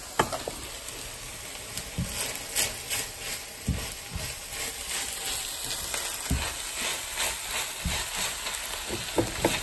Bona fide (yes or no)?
yes